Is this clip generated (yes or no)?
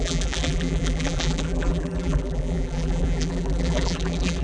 yes